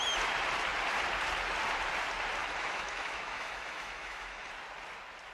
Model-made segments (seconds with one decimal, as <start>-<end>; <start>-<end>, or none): 2.4-4.5